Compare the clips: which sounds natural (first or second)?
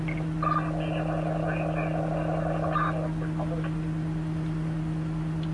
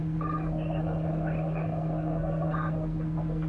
first